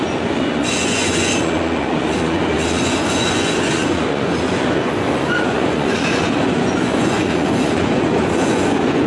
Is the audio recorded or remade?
remade